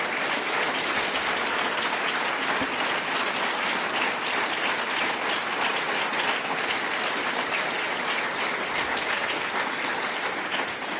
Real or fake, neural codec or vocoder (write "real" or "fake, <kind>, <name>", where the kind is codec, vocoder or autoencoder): real